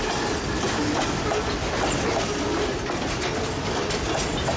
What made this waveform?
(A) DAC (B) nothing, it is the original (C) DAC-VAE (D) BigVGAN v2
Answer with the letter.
B